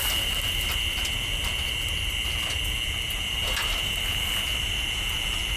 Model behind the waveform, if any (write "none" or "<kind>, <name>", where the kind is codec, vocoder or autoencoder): none